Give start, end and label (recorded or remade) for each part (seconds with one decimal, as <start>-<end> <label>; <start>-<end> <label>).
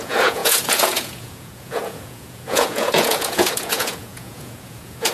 0.0-5.1 remade